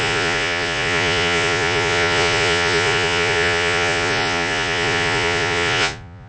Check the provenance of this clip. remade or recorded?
remade